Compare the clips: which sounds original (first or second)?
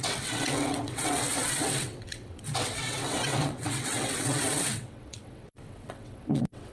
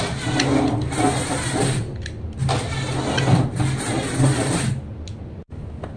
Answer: second